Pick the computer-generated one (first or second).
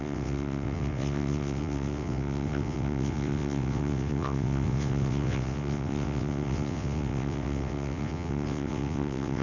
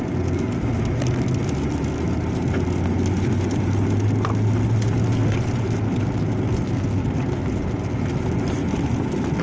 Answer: first